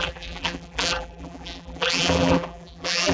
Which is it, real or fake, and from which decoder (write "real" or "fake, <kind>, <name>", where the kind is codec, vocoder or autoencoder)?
fake, vocoder, BigVGAN v2